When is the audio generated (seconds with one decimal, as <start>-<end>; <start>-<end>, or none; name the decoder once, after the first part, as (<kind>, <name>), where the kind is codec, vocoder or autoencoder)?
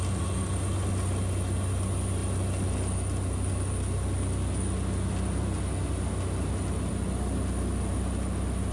none